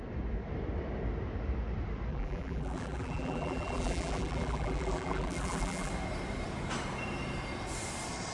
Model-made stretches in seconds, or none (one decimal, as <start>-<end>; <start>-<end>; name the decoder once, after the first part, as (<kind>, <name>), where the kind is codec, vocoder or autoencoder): 2.1-5.9 (vocoder, BigVGAN v2)